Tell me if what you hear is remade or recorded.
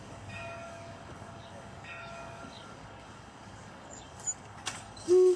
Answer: remade